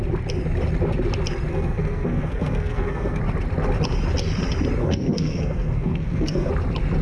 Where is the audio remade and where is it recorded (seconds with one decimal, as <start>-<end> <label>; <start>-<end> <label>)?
0.0-1.5 recorded; 1.5-3.2 remade; 3.2-4.8 recorded; 4.8-6.5 remade; 6.5-7.0 recorded